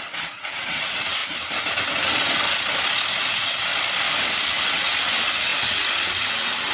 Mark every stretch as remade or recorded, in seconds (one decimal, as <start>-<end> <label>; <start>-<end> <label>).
0.0-1.2 remade; 1.2-3.2 recorded; 3.2-3.7 remade; 3.7-4.5 recorded; 4.5-6.7 remade